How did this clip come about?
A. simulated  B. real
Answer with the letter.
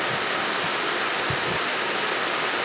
B